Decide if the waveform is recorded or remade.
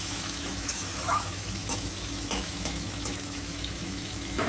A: remade